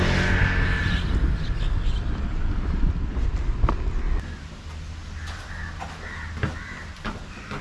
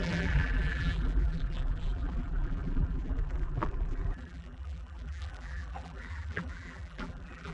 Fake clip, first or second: second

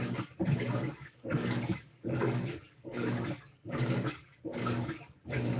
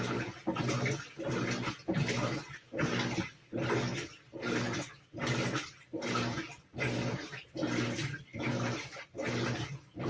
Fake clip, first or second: first